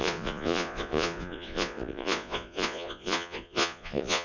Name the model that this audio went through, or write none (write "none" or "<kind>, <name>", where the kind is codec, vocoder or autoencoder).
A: vocoder, Vocos